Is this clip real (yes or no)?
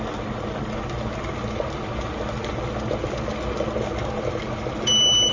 yes